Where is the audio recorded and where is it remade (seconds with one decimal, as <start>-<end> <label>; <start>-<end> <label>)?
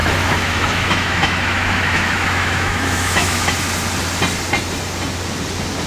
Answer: 0.0-3.5 remade; 3.5-5.9 recorded